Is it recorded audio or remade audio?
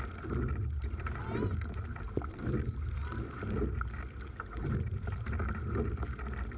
recorded